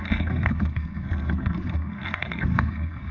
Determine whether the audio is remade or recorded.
remade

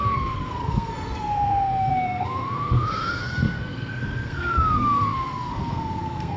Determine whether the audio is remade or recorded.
remade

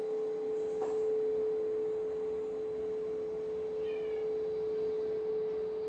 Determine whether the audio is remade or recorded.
recorded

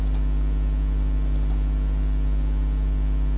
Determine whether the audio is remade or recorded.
recorded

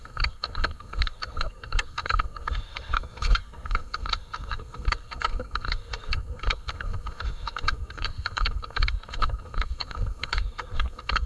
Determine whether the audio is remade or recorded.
remade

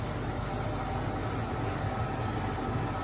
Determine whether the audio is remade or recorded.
recorded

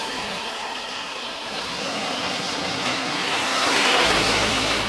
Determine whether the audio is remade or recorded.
remade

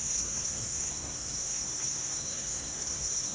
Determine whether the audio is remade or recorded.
remade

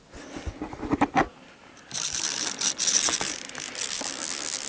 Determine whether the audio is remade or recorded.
recorded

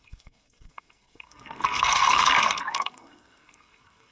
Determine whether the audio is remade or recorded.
remade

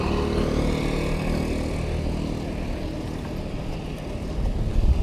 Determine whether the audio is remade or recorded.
recorded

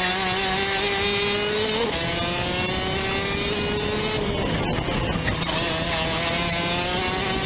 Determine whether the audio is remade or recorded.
recorded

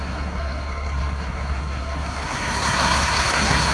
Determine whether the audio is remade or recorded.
remade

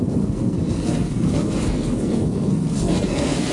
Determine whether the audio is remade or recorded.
remade